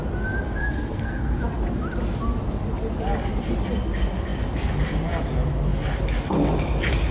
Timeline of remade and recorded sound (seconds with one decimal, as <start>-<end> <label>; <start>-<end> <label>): 0.0-0.6 recorded; 0.6-1.4 remade; 1.4-7.1 recorded